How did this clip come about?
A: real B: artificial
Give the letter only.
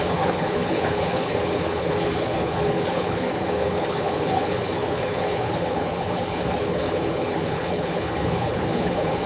B